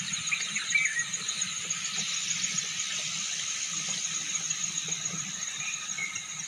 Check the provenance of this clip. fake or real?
real